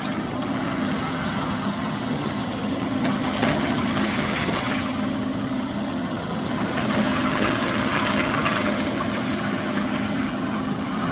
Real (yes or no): no